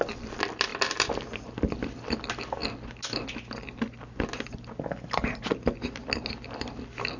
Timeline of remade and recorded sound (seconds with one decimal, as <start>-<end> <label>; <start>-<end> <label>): 0.0-7.2 recorded